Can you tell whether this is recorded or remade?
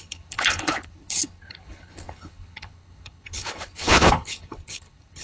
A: remade